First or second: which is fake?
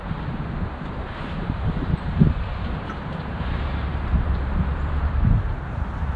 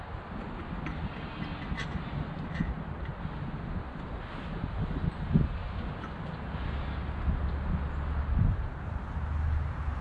first